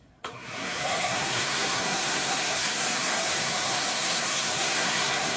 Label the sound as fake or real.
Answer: fake